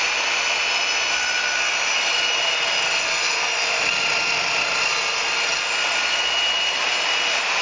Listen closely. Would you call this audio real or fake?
real